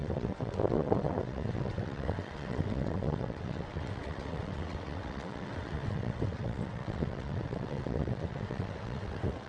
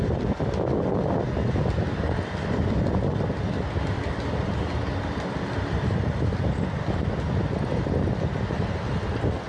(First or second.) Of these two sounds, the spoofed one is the first